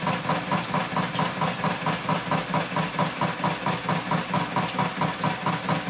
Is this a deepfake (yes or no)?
no